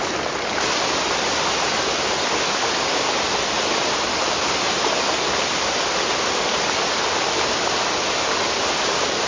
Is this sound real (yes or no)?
yes